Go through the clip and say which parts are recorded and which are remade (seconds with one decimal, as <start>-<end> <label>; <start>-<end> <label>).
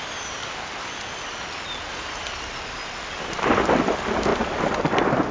0.0-5.3 recorded